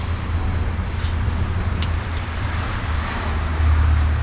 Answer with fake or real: real